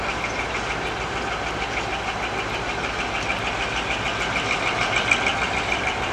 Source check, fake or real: real